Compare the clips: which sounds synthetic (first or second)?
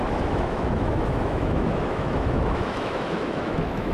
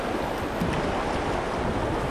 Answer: first